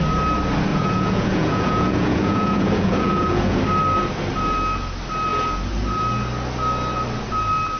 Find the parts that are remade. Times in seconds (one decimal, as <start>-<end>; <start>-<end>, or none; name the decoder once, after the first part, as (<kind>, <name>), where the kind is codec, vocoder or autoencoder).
0.7-3.6 (vocoder, Vocos)